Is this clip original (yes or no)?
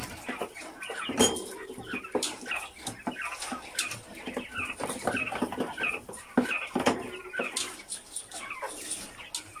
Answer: yes